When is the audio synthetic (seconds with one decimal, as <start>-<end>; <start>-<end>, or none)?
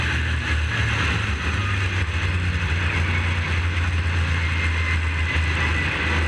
none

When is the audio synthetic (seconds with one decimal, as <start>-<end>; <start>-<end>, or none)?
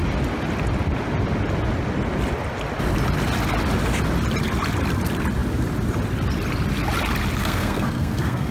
7.4-8.5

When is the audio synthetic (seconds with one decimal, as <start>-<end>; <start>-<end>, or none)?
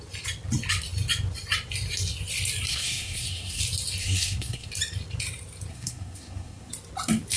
2.7-3.6; 4.0-4.7; 5.7-6.7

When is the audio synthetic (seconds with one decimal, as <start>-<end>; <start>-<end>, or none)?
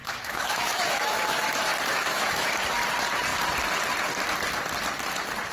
0.0-1.5; 1.9-2.5